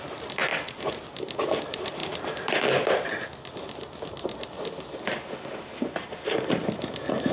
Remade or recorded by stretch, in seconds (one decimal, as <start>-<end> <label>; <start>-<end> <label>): 0.0-7.3 recorded